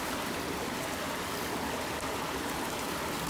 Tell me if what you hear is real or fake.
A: real